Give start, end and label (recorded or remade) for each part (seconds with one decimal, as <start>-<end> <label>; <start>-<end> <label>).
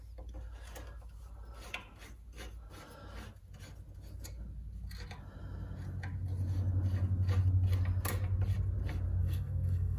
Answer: 0.0-9.2 recorded; 9.2-10.0 remade